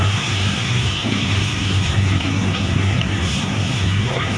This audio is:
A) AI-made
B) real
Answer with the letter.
A